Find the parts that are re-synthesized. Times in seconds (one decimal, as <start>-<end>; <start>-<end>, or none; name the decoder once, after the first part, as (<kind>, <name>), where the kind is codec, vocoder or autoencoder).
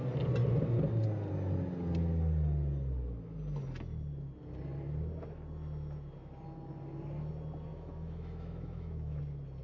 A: 7.7-9.2 (autoencoder, DAC-VAE)